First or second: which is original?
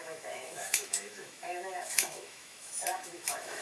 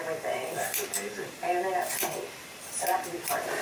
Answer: second